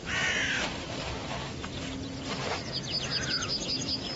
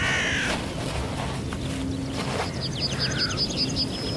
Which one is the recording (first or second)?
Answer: second